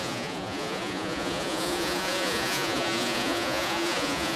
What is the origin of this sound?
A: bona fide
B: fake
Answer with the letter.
B